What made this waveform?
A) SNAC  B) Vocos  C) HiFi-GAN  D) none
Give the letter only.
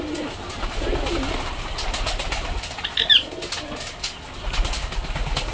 D